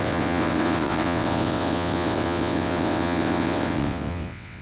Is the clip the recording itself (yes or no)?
no